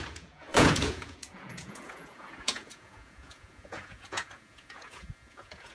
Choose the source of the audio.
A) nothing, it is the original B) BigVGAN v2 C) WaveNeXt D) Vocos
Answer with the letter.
D